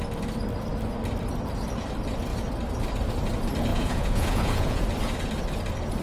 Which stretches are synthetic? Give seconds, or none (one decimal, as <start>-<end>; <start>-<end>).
3.7-4.9